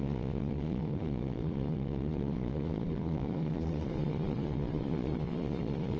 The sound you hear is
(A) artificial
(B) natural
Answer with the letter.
A